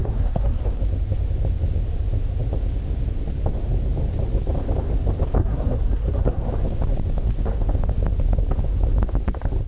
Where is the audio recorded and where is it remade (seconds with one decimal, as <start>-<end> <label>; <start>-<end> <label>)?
0.0-0.8 remade; 0.8-5.4 recorded; 5.4-6.5 remade; 6.5-9.7 recorded